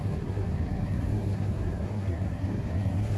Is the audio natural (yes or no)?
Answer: no